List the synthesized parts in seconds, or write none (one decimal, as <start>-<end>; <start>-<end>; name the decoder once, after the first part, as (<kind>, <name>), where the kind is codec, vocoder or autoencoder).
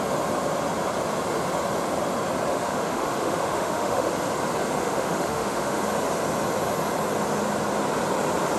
2.5-4.1 (autoencoder, DAC-VAE); 4.8-5.8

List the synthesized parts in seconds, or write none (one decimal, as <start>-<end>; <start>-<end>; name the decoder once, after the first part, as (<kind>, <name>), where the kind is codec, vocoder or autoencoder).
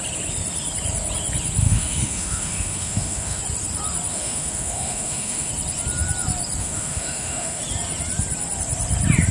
1.6-3.4 (autoencoder, DAC-VAE); 4.1-5.5; 6.6-7.6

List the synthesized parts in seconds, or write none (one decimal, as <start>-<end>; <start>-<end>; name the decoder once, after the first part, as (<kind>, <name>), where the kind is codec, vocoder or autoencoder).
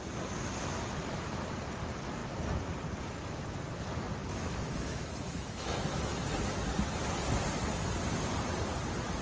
4.2-6.2 (autoencoder, DAC-VAE)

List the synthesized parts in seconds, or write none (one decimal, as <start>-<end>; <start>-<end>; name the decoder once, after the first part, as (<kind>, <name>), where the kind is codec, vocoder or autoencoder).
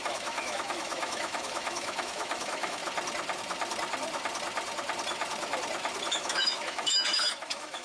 0.0-2.8 (autoencoder, DAC-VAE); 6.1-7.8